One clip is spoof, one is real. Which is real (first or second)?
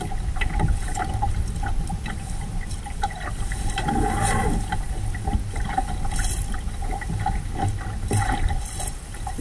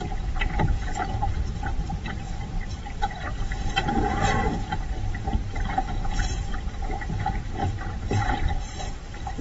first